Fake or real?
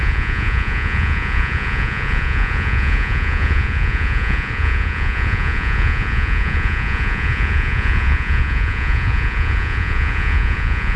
fake